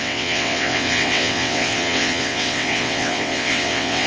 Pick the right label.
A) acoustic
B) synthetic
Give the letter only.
B